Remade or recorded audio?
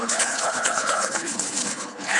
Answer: remade